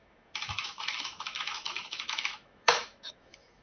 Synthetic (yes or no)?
yes